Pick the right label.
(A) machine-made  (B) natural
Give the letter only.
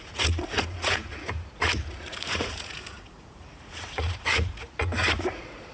A